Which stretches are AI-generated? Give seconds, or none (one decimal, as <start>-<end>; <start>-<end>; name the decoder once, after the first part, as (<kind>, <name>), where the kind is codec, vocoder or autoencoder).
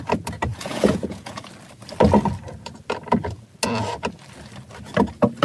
0.5-1.4 (vocoder, Vocos)